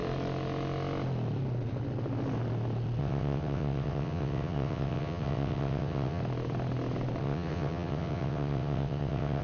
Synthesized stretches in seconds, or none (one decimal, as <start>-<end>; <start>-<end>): 3.0-6.2; 7.2-9.4